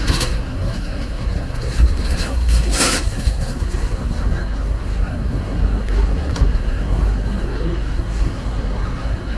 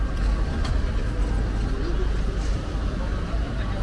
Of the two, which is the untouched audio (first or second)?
second